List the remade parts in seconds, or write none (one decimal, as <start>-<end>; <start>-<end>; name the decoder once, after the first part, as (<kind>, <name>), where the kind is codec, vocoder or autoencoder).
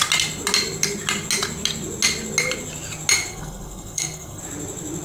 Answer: 3.3-4.4 (codec, SNAC)